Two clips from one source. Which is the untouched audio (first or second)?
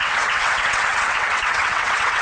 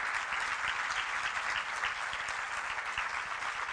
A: second